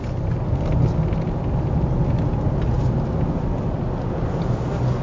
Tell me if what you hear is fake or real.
real